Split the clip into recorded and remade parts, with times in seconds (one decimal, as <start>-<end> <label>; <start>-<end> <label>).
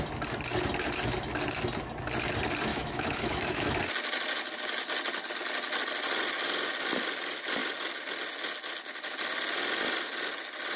0.0-2.7 recorded; 2.7-3.8 remade; 3.8-10.8 recorded